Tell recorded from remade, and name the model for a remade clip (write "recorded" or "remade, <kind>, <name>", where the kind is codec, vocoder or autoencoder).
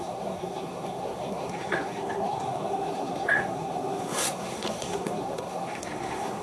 remade, codec, SNAC